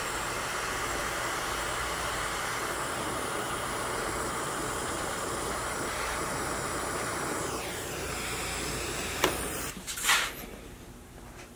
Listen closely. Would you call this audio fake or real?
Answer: fake